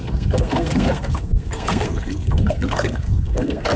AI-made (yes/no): yes